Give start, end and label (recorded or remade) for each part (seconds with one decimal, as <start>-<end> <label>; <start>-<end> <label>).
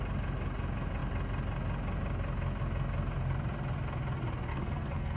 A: 0.0-4.5 recorded; 4.5-5.2 remade